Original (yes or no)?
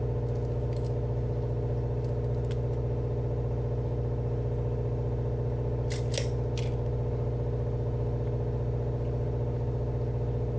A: yes